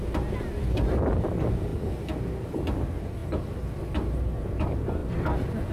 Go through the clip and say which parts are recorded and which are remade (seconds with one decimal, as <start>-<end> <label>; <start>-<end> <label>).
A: 0.0-5.7 recorded